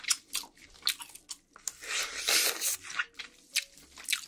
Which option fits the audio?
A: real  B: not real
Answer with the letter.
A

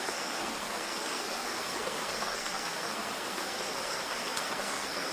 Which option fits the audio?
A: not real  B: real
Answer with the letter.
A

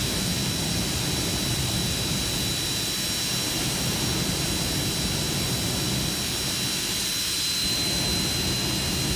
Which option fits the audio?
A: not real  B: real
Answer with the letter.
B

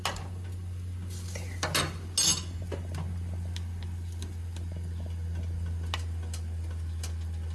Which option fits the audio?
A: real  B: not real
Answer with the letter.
A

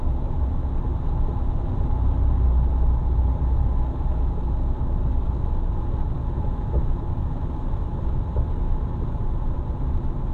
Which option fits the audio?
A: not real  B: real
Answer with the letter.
B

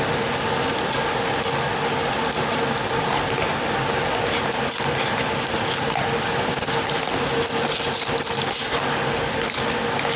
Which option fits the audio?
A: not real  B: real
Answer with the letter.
B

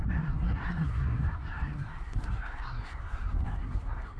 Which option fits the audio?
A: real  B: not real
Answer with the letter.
B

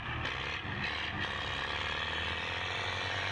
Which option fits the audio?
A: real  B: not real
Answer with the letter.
A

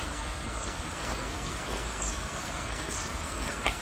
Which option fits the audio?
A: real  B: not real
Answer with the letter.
B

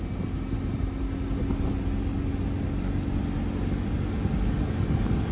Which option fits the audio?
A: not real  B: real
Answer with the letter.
B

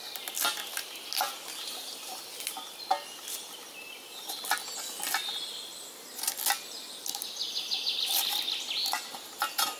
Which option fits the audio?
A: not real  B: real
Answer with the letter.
B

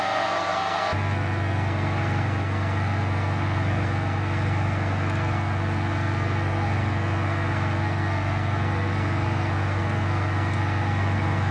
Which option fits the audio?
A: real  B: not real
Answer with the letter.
B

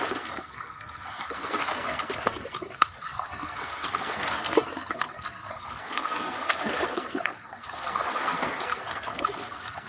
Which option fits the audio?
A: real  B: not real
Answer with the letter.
B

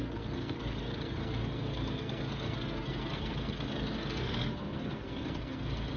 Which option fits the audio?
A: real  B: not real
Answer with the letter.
B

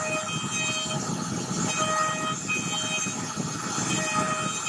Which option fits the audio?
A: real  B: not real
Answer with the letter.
A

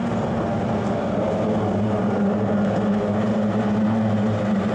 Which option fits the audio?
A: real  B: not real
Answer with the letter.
A